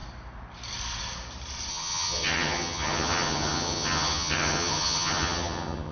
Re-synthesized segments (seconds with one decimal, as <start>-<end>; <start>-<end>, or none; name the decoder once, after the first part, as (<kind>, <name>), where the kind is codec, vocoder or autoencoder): 1.7-5.9 (vocoder, HiFi-GAN)